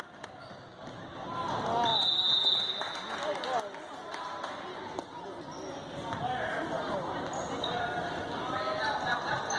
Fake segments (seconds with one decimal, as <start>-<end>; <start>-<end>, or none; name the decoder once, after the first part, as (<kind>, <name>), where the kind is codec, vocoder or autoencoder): none

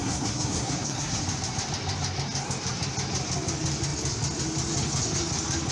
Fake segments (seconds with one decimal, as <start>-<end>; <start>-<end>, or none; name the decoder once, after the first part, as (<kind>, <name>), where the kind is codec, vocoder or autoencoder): 0.0-1.2 (codec, SNAC)

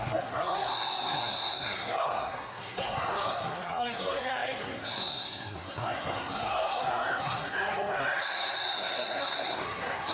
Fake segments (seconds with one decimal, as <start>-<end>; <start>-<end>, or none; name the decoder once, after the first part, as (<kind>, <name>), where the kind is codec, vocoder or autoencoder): 0.0-10.1 (codec, SNAC)

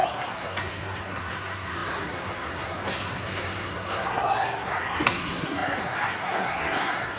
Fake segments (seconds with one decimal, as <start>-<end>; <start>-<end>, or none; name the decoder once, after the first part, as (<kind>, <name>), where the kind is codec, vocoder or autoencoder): 0.0-7.2 (codec, SNAC)

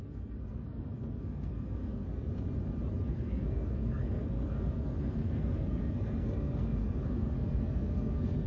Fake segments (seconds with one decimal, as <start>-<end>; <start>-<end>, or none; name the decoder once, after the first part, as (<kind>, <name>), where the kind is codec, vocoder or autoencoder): 0.0-2.3 (codec, SNAC); 3.1-8.5

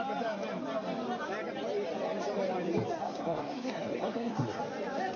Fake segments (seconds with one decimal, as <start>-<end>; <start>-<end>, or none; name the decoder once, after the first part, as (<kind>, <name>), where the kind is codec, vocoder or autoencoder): 3.0-4.6 (codec, SNAC)

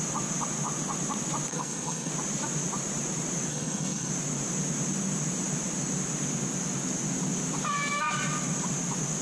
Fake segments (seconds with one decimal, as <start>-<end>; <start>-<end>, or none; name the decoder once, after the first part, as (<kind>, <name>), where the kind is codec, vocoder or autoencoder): 1.5-2.1 (codec, SNAC); 3.5-4.1

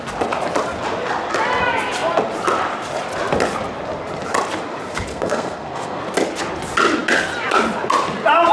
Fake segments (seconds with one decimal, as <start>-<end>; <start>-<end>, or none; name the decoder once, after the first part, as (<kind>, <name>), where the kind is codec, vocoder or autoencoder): 5.1-6.0 (codec, SNAC)